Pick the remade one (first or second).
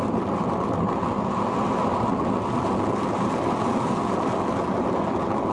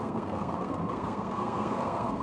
second